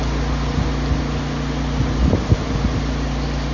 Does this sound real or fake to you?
real